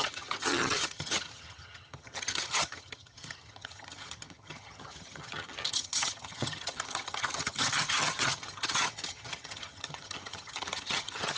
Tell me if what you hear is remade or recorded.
remade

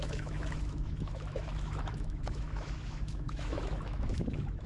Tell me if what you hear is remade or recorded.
remade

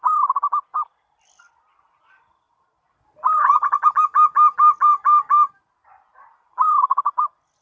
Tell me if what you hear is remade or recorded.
recorded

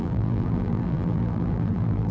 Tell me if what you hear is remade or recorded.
remade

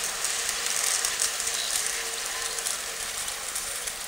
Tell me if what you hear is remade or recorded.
remade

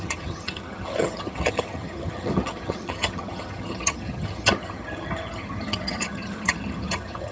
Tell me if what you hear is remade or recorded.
remade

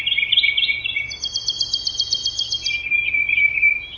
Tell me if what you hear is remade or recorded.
recorded